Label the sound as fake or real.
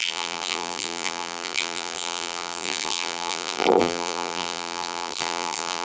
fake